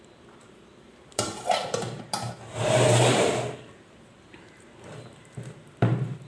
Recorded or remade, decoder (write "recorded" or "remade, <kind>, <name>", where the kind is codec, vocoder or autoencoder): remade, vocoder, BigVGAN v2